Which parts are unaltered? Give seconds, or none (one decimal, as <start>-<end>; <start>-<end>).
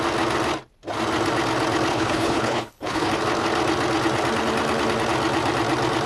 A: 0.0-1.9; 3.1-6.1